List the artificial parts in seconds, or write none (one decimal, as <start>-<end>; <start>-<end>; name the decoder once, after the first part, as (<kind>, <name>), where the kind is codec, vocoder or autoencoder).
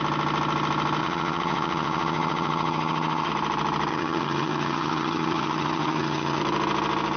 1.0-3.3 (vocoder, HiFi-GAN); 3.9-6.4